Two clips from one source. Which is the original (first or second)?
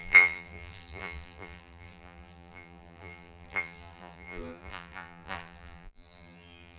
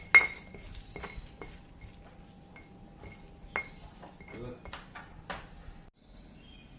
second